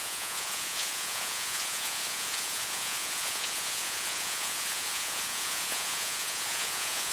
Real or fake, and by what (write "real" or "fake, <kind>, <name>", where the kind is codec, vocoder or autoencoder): fake, vocoder, Vocos